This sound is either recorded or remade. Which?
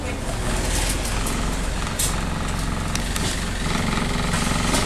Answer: recorded